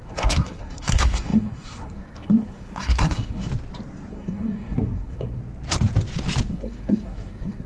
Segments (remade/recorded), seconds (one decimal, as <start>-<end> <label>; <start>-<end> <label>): 0.0-3.5 remade; 3.5-4.1 recorded; 4.1-5.4 remade; 5.4-6.5 recorded; 6.5-7.7 remade